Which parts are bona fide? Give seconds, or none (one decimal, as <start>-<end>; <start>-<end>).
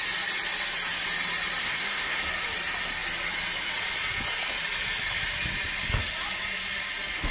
0.0-1.6; 2.2-7.3